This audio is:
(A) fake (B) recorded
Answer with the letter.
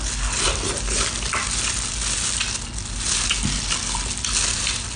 B